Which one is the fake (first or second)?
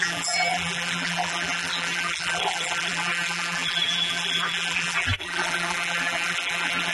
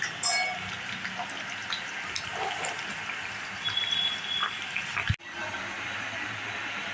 first